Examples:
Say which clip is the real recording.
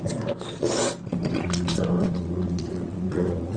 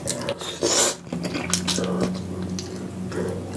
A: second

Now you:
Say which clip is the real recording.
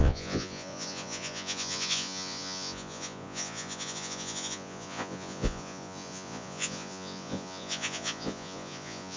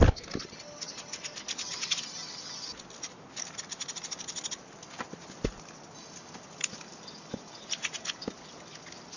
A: second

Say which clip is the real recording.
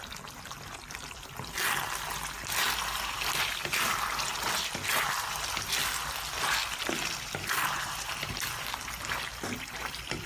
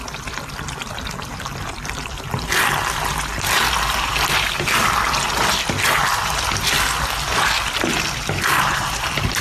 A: first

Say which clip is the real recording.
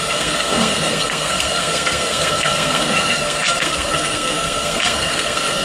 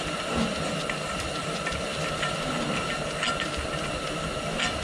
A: second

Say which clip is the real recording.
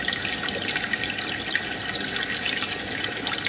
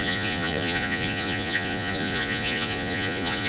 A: first